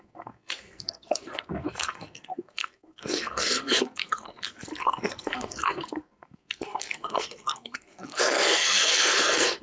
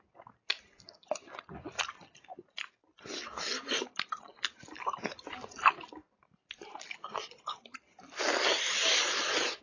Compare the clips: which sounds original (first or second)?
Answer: second